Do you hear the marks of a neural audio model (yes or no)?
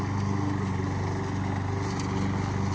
no